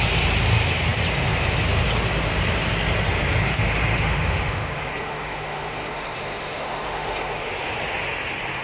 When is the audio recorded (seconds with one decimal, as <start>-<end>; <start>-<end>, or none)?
0.0-3.5; 7.5-8.6